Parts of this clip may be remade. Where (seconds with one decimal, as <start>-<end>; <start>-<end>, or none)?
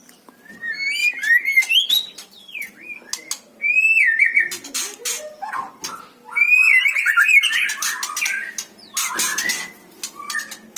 none